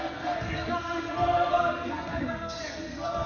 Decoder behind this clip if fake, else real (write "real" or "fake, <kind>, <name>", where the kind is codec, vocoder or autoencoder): fake, codec, SNAC